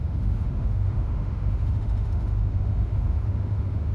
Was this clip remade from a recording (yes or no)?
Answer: yes